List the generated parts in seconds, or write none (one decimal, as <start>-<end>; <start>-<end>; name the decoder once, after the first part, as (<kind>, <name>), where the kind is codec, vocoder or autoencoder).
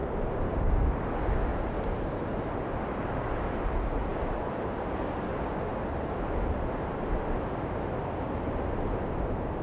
0.0-0.7 (vocoder, BigVGAN v2); 1.5-2.4